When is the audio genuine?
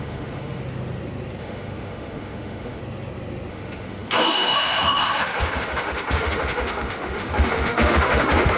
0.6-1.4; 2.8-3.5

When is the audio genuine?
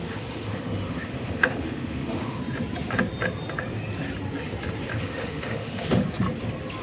2.4-5.0; 6.0-6.8